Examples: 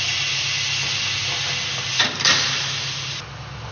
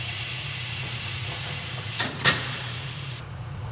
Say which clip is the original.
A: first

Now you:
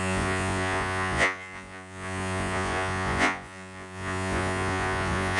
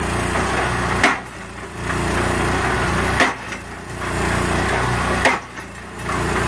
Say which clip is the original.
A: second